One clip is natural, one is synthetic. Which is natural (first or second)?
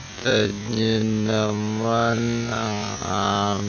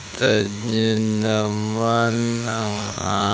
first